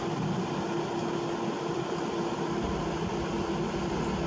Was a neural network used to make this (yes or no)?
no